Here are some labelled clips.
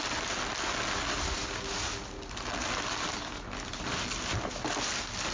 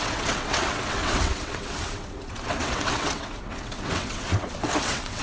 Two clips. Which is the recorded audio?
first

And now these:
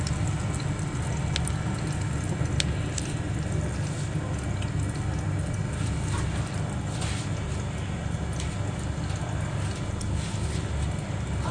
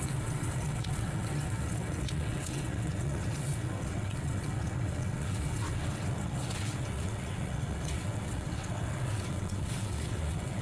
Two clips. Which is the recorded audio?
first